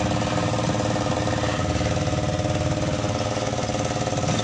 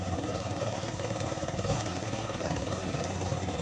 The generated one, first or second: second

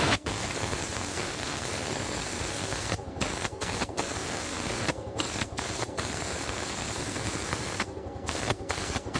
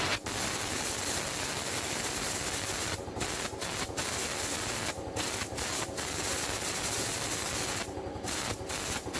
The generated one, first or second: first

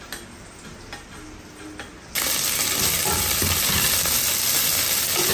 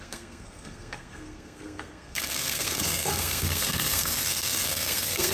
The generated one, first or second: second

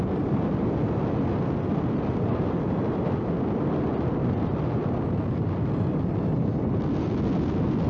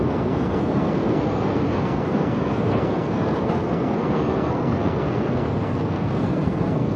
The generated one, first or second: second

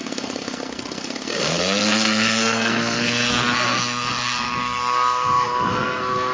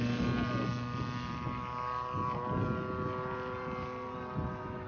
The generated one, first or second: first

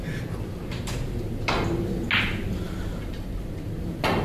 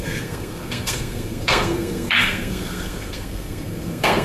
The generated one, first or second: second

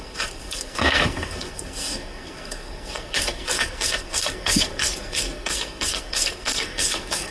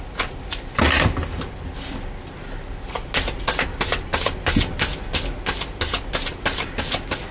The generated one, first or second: first